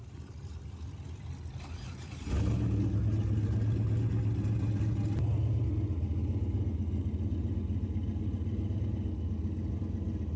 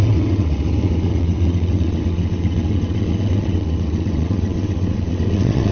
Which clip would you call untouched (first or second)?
first